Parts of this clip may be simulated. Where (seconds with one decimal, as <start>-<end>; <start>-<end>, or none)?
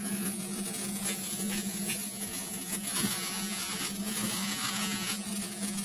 0.0-5.8